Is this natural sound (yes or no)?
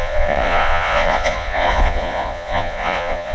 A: no